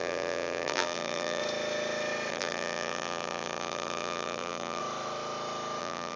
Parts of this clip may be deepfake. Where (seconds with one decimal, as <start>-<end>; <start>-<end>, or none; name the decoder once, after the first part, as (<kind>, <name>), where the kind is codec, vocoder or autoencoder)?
0.0-1.4 (vocoder, BigVGAN v2); 2.3-4.8; 5.8-6.2